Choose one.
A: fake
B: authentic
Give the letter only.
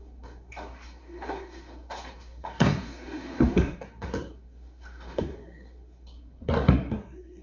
A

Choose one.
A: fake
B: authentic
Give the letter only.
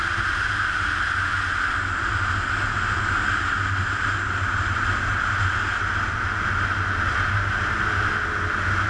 B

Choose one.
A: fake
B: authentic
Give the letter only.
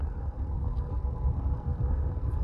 A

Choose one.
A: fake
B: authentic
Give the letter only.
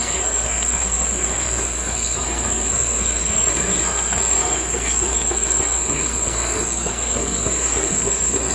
A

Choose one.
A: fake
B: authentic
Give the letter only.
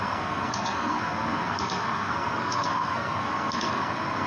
A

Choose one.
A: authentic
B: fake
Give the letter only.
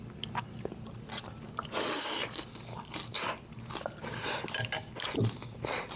A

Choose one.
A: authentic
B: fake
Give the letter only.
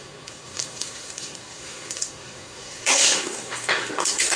B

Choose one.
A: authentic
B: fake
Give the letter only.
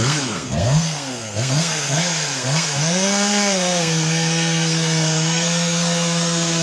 B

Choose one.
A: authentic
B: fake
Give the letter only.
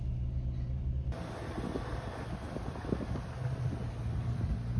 A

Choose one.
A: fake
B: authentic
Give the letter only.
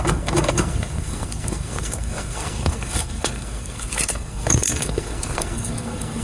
A